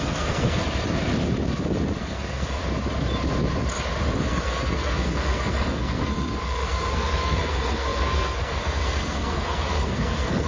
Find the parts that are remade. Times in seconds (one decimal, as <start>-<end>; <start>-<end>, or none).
0.0-0.6; 2.0-2.6; 4.2-10.5